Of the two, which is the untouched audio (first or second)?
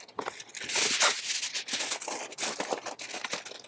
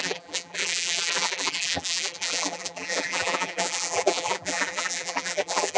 first